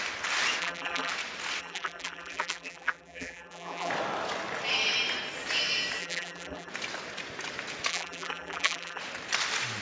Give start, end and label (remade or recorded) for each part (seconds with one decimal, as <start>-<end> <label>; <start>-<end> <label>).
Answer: 0.0-0.6 recorded; 0.6-1.1 remade; 1.1-1.6 recorded; 1.6-3.9 remade; 3.9-6.0 recorded; 6.0-6.7 remade; 6.7-7.9 recorded; 7.9-9.0 remade; 9.0-9.8 recorded

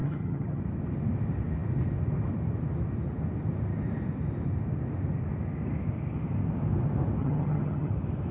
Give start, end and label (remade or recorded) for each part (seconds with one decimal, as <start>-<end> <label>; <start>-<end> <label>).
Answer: 0.0-0.6 remade; 0.6-7.2 recorded; 7.2-7.9 remade; 7.9-8.3 recorded